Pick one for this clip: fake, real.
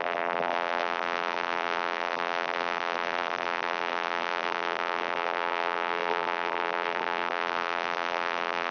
fake